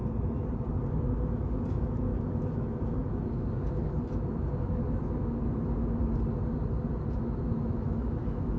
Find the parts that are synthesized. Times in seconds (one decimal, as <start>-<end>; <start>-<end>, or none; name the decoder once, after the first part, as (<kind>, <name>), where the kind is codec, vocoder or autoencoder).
0.9-6.0 (autoencoder, DAC-VAE); 7.2-8.6

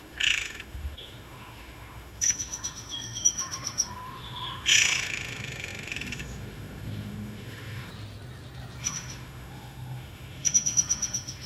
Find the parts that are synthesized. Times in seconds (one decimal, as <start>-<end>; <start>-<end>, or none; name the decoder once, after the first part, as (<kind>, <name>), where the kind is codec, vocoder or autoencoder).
0.0-7.9 (autoencoder, DAC-VAE); 8.8-11.5

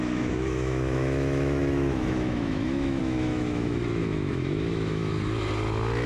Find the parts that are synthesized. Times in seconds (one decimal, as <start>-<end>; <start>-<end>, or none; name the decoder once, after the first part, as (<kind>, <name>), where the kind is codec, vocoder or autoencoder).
0.0-5.0 (autoencoder, DAC-VAE)

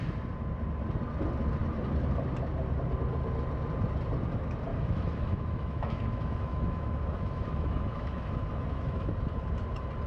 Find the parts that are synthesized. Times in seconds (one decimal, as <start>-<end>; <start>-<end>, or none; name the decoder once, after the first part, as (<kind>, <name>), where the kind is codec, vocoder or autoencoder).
4.7-9.1 (autoencoder, DAC-VAE)

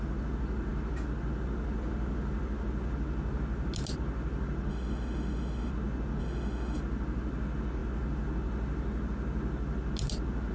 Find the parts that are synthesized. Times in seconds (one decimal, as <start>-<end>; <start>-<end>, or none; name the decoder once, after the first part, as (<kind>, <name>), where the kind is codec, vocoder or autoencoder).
4.7-5.7 (autoencoder, DAC-VAE); 6.2-6.8

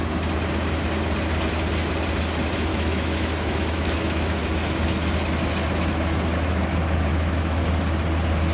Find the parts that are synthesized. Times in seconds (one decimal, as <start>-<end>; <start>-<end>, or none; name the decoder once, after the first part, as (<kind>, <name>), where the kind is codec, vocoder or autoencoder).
2.7-4.4 (autoencoder, DAC-VAE); 7.1-7.6